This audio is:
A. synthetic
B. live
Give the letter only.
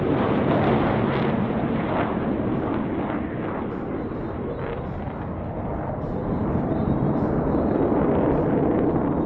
B